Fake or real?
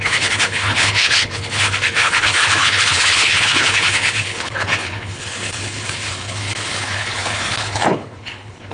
fake